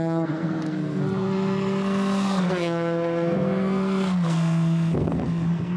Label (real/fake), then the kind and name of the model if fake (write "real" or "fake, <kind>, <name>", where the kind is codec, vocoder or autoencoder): fake, codec, SNAC